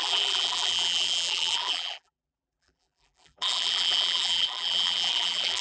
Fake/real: fake